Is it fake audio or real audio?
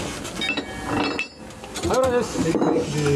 real